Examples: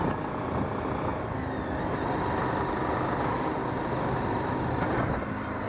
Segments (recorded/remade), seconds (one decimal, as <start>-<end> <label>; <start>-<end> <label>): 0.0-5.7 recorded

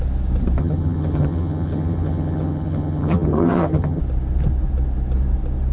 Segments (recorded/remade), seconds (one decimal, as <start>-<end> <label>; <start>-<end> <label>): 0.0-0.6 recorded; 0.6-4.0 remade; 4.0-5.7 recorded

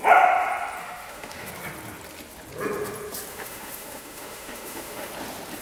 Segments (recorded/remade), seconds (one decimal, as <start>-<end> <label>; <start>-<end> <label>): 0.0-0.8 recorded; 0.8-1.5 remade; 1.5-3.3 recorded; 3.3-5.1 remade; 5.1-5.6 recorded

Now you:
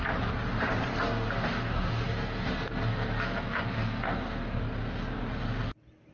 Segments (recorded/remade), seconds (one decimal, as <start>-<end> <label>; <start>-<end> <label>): 0.0-0.9 recorded; 0.9-4.6 remade; 4.6-6.1 recorded